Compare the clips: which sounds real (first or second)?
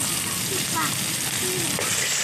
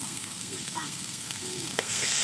first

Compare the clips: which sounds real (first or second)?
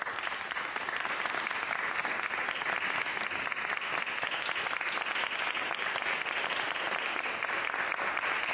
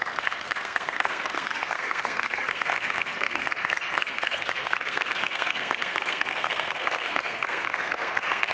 first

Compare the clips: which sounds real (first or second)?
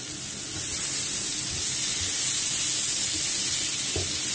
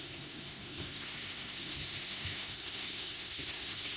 first